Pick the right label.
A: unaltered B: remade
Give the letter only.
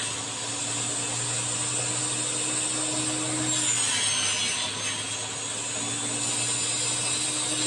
A